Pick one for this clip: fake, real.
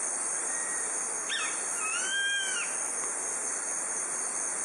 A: real